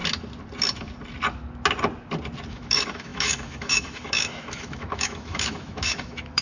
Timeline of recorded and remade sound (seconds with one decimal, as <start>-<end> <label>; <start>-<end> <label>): 0.0-2.5 recorded; 2.5-6.4 remade